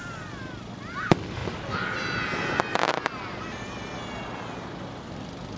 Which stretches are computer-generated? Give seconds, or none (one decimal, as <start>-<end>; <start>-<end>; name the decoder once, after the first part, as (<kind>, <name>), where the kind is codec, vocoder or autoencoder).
none